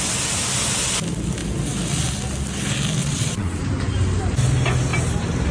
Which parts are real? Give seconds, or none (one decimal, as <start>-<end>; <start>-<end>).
0.0-3.0; 3.6-5.5